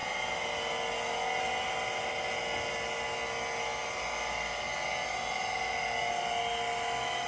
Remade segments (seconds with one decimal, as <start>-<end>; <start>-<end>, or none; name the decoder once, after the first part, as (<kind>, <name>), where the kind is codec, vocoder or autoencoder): none